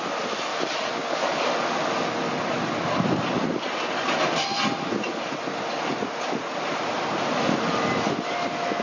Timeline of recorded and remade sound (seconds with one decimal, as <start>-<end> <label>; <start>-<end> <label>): 0.0-8.8 recorded